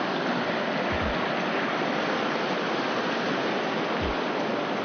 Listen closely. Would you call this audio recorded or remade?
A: recorded